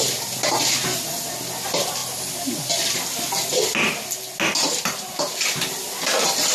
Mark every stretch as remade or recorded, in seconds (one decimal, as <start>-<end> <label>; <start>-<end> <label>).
0.0-6.5 recorded